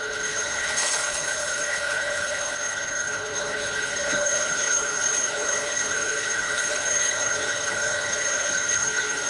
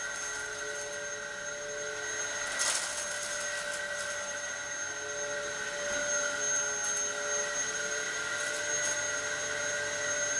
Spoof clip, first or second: first